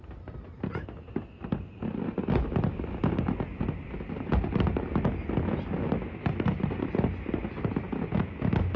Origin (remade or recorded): recorded